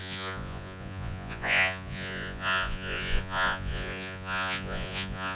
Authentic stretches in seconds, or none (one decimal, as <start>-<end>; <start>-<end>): none